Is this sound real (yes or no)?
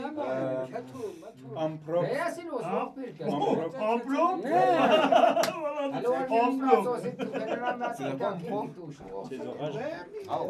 yes